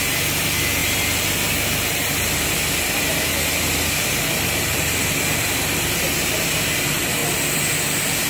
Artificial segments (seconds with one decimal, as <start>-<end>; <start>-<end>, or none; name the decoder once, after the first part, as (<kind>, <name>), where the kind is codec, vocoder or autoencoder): 0.0-0.8 (vocoder, BigVGAN v2); 2.7-7.2; 7.7-8.3